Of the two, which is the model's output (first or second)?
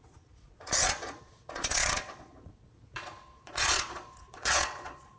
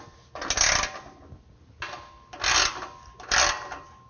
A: first